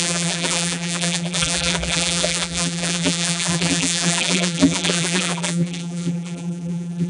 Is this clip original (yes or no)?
no